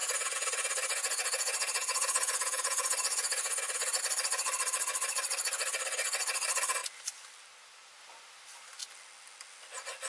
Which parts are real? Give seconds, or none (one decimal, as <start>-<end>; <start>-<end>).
4.0-10.1